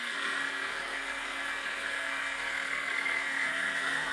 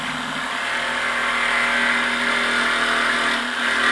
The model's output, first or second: first